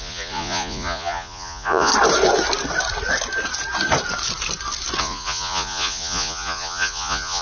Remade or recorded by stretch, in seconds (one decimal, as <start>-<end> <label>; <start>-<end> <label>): 0.0-1.9 remade; 1.9-5.0 recorded; 5.0-7.4 remade